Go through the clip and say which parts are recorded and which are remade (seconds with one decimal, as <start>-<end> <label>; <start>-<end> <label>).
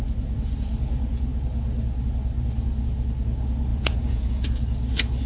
0.0-3.7 recorded; 3.7-4.3 remade; 4.3-5.3 recorded